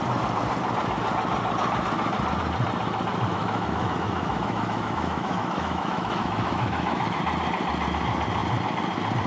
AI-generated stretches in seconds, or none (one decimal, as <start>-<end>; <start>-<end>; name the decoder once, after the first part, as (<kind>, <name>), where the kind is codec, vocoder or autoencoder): 3.3-7.2 (autoencoder, DAC-VAE)